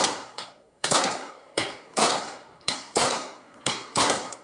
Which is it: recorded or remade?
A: remade